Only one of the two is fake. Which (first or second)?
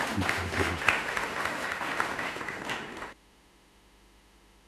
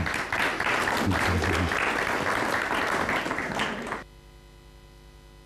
first